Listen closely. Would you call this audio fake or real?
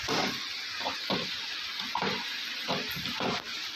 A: fake